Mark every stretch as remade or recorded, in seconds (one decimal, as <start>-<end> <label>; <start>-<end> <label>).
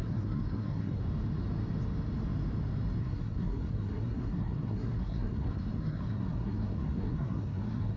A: 0.0-1.0 remade; 1.0-3.0 recorded; 3.0-8.0 remade